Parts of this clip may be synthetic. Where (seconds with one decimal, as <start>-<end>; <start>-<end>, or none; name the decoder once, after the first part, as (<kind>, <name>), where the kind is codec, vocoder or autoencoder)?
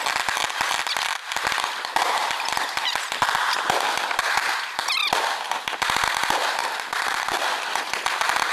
6.6-7.4 (vocoder, BigVGAN v2)